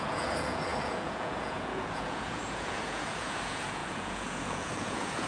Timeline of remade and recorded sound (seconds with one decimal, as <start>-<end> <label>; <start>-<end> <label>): 0.0-5.3 remade